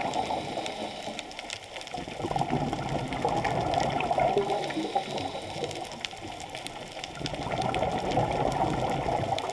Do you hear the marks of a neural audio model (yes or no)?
no